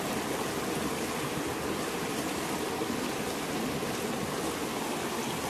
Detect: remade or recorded recorded